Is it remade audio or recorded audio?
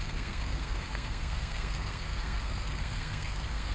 remade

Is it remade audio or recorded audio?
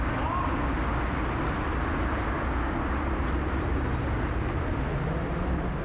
recorded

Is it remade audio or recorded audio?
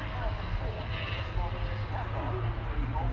recorded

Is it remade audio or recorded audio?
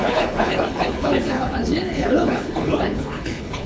remade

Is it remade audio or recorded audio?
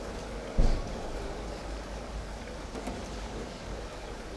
remade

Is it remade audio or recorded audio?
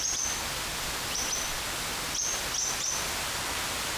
recorded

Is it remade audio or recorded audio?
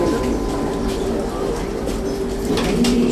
recorded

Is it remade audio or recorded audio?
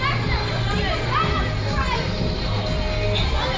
recorded